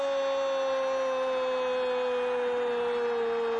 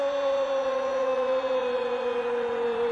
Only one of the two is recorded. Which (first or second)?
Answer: first